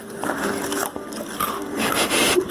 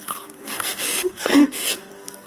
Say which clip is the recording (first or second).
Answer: first